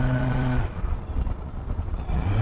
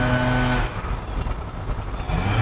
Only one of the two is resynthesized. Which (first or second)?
first